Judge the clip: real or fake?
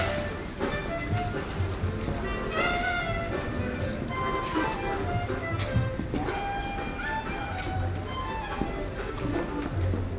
real